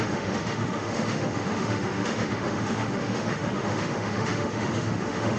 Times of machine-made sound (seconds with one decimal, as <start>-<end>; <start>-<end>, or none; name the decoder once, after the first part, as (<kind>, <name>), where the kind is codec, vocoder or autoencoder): 0.0-5.4 (autoencoder, DAC-VAE)